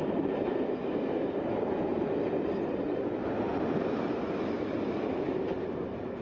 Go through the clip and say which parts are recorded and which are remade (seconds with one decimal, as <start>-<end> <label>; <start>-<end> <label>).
0.0-6.2 recorded